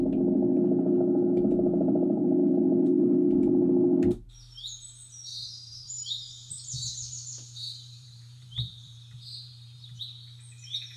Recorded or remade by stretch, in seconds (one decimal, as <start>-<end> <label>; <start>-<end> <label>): 0.0-5.3 recorded; 5.3-10.0 remade; 10.0-11.0 recorded